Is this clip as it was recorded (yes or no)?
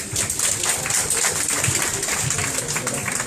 yes